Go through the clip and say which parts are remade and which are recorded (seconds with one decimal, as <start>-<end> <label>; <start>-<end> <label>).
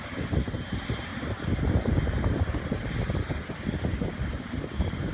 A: 0.0-1.1 remade; 1.1-4.2 recorded; 4.2-5.1 remade